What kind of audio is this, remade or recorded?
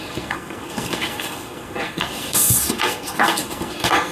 remade